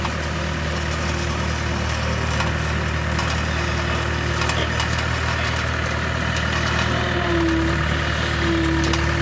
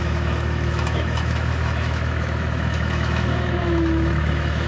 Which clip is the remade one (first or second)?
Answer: second